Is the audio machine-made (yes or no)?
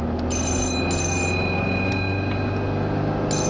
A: no